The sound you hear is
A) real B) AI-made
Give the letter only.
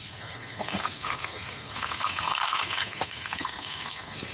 B